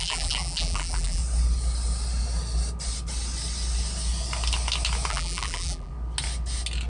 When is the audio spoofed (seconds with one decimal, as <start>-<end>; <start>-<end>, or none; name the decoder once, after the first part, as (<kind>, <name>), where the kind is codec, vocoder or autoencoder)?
0.0-1.2 (vocoder, BigVGAN v2); 5.1-5.9